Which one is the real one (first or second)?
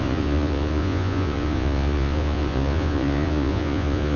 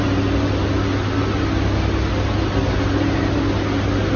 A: second